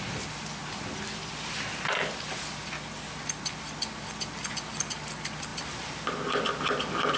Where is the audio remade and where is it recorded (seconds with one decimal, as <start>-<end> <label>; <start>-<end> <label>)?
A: 0.0-7.2 recorded